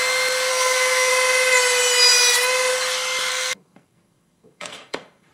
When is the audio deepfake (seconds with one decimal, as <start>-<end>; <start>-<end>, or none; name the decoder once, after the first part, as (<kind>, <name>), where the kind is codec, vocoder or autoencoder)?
0.5-1.1 (codec, SNAC); 3.3-5.3